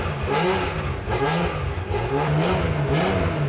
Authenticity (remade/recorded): recorded